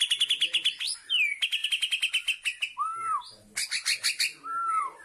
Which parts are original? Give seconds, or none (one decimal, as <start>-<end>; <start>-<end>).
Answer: 0.0-5.0